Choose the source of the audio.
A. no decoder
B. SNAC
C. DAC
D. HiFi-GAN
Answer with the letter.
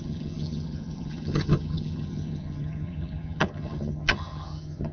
D